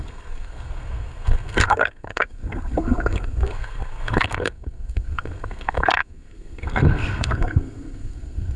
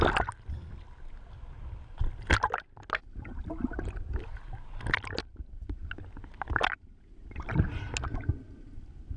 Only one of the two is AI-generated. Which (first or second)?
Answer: first